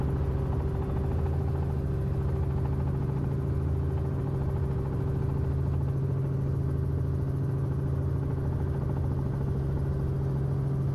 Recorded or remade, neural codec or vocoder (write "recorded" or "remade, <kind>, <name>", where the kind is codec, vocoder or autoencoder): recorded